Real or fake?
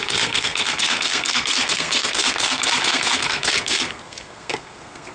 fake